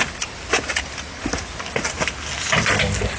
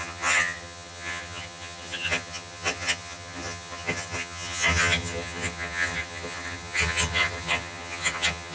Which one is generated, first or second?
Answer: second